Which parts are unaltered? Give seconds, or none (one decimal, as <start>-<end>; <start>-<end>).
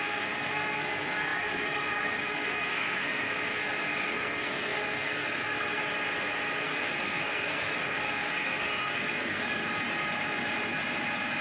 5.8-6.6; 9.6-11.4